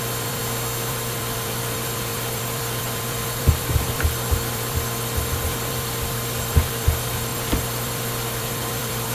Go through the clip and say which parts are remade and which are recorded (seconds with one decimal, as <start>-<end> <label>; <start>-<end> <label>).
0.0-0.4 remade; 0.4-0.9 recorded; 0.9-9.1 remade